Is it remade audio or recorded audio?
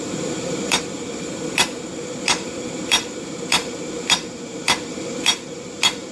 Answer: remade